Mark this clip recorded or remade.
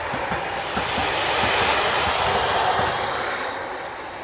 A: recorded